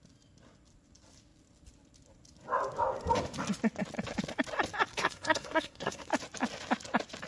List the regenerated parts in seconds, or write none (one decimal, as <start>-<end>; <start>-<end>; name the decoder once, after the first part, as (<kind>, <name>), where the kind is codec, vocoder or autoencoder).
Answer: 4.9-6.1 (codec, SNAC)